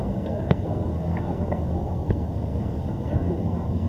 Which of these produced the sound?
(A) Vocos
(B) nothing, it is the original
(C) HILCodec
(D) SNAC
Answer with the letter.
D